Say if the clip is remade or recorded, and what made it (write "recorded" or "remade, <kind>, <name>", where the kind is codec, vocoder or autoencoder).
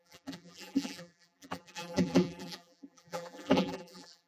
remade, vocoder, BigVGAN v2